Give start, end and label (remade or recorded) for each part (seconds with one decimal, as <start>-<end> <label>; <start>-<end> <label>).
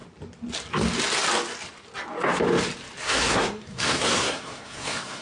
0.0-3.0 recorded; 3.0-5.2 remade